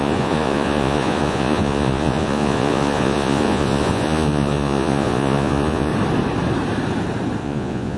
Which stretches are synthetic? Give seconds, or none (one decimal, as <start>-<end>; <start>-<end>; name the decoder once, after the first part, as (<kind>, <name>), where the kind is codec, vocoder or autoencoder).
0.0-5.9 (vocoder, Vocos); 7.4-8.0